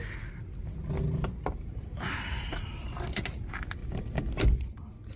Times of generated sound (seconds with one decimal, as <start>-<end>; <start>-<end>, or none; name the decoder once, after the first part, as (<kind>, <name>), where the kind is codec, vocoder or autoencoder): none

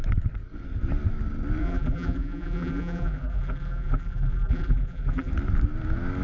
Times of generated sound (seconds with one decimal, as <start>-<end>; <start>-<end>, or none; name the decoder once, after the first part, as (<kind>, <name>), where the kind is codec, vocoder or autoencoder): 1.6-5.3 (vocoder, BigVGAN v2)